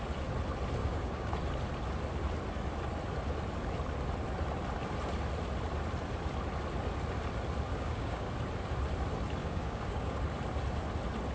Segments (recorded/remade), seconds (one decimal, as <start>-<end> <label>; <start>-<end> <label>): 0.0-0.8 recorded; 0.8-1.3 remade; 1.3-7.7 recorded; 7.7-8.3 remade; 8.3-9.4 recorded; 9.4-10.2 remade; 10.2-11.3 recorded

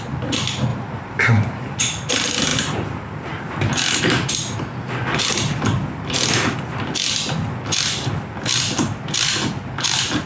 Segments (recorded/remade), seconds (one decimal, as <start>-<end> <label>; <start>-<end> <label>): 0.0-0.7 recorded; 0.7-1.8 remade; 1.8-10.3 recorded

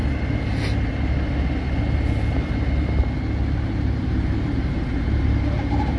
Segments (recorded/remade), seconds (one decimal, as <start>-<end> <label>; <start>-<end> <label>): 0.0-3.6 recorded; 3.6-6.0 remade

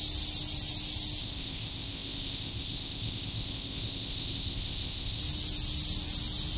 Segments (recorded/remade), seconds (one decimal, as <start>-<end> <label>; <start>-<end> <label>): 0.0-1.2 recorded; 1.2-5.2 remade; 5.2-6.6 recorded

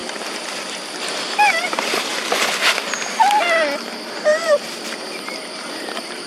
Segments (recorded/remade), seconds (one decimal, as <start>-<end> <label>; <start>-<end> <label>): 0.0-2.1 remade; 2.1-4.2 recorded; 4.2-6.3 remade

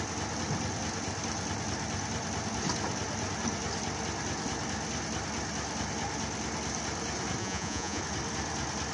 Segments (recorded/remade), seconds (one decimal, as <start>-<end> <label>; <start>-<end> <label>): 0.0-7.4 recorded; 7.4-8.0 remade; 8.0-8.9 recorded